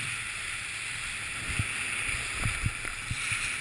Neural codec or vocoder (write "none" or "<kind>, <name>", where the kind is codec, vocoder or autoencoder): none